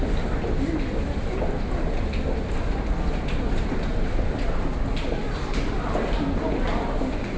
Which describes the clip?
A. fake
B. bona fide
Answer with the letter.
B